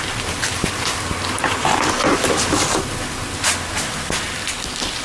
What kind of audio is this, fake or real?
real